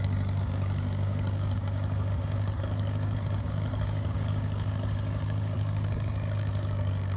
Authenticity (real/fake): fake